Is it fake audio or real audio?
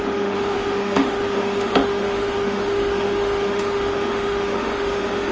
fake